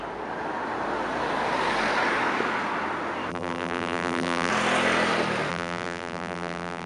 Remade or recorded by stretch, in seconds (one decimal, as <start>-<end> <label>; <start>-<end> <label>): 0.0-3.3 recorded; 3.3-4.5 remade; 4.5-5.5 recorded; 5.5-6.9 remade